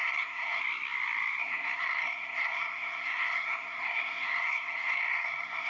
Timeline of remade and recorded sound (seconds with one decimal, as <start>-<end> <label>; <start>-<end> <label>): 0.0-0.6 remade; 0.6-1.4 recorded; 1.4-5.7 remade